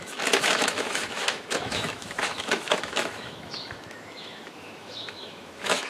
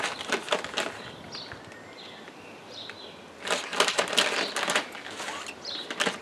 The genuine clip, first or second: second